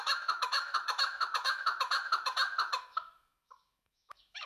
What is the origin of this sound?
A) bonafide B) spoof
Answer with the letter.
B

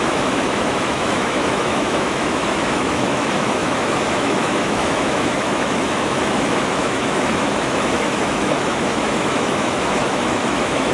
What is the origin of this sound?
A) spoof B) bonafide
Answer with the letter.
A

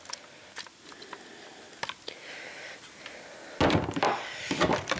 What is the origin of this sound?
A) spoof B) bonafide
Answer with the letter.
B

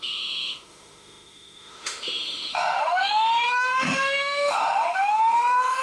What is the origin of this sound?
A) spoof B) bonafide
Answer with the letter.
A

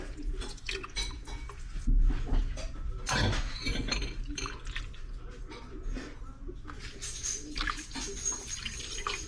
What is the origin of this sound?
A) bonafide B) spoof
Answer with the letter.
A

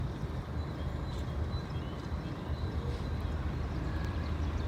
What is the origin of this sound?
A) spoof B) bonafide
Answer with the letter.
B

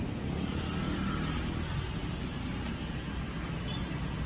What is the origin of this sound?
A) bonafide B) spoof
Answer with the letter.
A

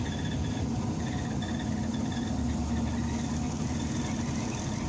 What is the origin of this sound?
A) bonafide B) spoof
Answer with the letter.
A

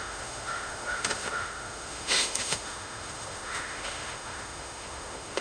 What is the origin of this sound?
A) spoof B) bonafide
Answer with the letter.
A